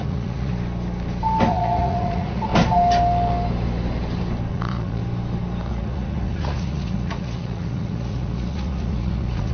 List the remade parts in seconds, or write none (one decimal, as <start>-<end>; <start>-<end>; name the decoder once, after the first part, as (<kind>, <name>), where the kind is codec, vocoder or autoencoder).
0.0-0.5 (vocoder, Vocos); 1.5-2.5; 4.5-5.0; 5.7-9.5